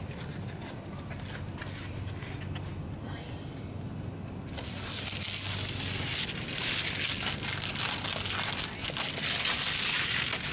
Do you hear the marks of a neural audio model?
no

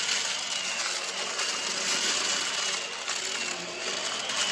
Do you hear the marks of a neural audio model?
no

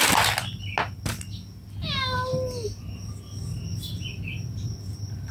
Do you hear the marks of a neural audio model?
no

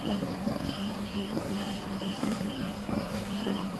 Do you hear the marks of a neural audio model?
yes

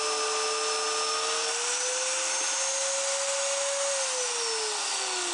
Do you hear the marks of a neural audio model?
no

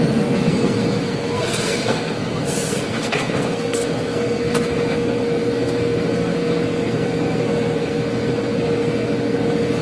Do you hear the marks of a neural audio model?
yes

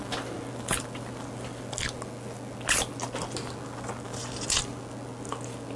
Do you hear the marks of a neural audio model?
no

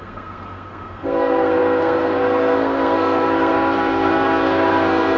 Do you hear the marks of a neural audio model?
yes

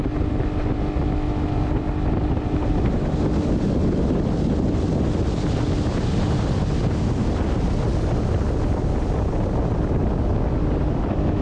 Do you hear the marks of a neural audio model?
no